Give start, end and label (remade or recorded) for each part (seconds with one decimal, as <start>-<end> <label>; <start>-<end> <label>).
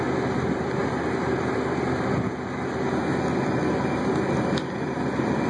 0.0-5.5 recorded